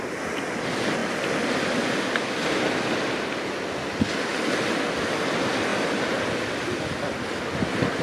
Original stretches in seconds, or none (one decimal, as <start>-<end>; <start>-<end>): 0.0-8.0